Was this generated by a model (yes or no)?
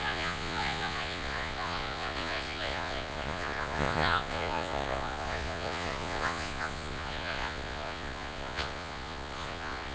yes